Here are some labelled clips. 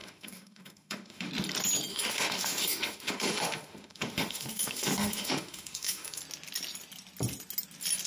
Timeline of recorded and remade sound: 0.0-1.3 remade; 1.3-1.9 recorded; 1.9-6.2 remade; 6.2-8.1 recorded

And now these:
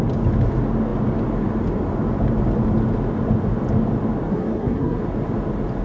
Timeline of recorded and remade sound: 0.0-4.3 recorded; 4.3-5.0 remade; 5.0-5.8 recorded